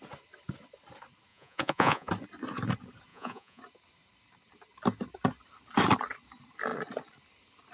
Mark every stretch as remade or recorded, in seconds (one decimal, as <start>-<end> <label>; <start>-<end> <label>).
0.0-1.3 recorded; 1.3-2.1 remade; 2.1-3.1 recorded; 3.1-3.6 remade; 3.6-7.7 recorded